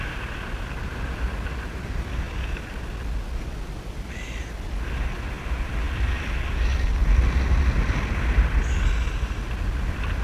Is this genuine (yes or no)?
yes